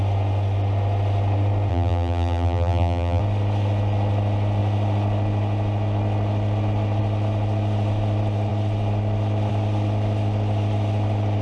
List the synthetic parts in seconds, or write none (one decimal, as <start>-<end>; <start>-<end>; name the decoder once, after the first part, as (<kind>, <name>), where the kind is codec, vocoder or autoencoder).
1.7-3.2 (vocoder, BigVGAN v2)